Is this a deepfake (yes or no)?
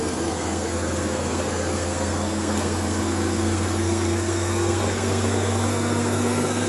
yes